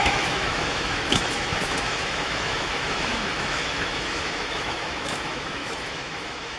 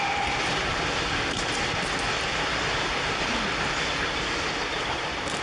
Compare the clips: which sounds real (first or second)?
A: second